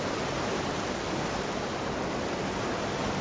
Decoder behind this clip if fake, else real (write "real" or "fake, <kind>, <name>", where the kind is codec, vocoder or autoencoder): real